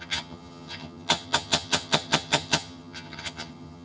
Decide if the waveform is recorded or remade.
remade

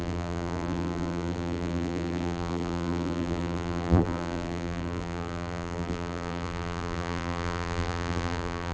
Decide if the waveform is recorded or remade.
remade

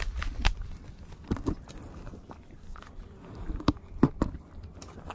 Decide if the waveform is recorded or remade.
recorded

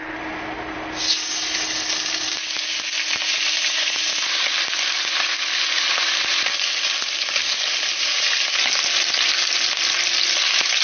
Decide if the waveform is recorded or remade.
recorded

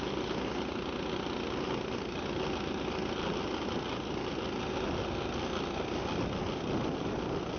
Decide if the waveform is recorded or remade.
recorded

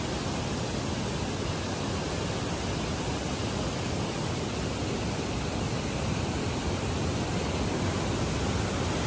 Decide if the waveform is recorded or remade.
recorded